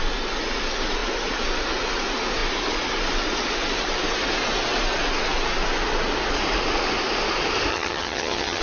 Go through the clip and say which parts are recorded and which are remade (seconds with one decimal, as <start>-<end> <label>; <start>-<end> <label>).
0.0-7.7 recorded; 7.7-8.6 remade